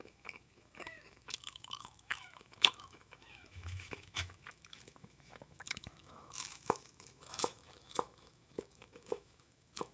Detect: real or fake fake